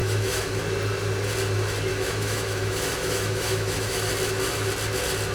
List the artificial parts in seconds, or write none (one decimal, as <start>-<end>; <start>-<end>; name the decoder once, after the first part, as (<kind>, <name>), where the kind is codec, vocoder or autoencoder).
0.0-0.6 (autoencoder, DAC-VAE); 1.9-4.1